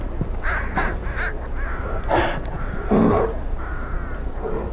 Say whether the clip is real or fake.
real